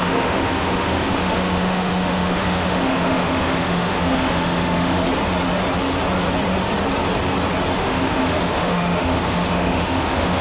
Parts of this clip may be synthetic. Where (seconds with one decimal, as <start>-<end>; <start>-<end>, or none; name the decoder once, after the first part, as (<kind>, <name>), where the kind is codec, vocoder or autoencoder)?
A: 0.0-5.0 (autoencoder, DAC-VAE); 7.8-10.4